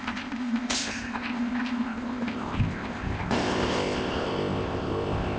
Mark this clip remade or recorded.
remade